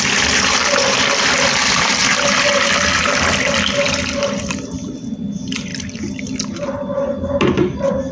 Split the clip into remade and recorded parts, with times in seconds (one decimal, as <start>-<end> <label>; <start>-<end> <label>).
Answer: 0.0-2.0 remade; 2.0-3.1 recorded; 3.1-8.1 remade